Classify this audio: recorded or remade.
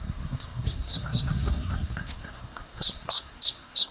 remade